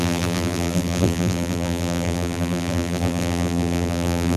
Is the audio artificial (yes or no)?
yes